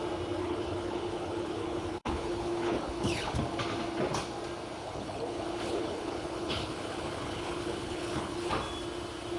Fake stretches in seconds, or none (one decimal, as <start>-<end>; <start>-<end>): 0.4-3.4; 4.8-8.5